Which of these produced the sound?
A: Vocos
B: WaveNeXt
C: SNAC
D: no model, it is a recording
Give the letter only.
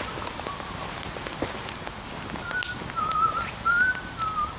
D